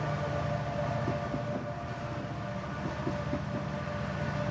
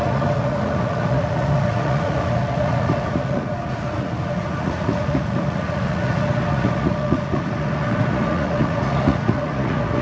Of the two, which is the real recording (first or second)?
first